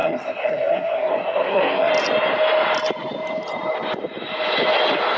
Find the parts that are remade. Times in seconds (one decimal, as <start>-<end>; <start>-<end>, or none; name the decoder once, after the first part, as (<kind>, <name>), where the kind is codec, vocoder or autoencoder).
0.0-1.9 (codec, SNAC)